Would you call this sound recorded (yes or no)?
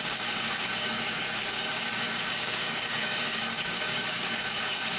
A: no